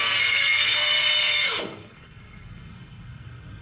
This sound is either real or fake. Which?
fake